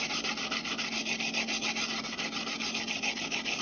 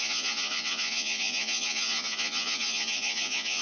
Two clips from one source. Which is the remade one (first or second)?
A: second